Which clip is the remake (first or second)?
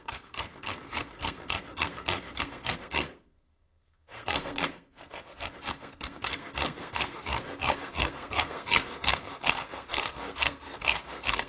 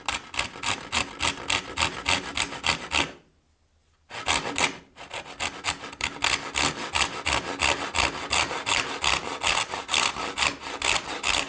first